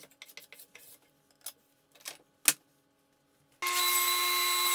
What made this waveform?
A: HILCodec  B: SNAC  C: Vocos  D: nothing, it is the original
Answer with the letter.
D